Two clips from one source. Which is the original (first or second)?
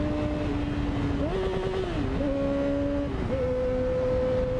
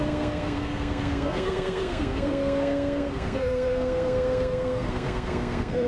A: first